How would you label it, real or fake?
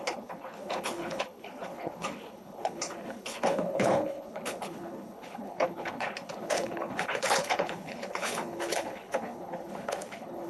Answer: fake